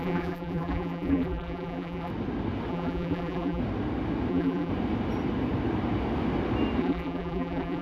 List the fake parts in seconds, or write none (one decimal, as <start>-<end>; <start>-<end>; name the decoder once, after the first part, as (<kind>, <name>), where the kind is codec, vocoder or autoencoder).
0.0-2.1 (vocoder, BigVGAN v2); 2.7-3.6; 4.3-4.7; 6.8-7.8